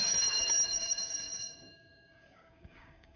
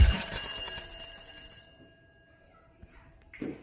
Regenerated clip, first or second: first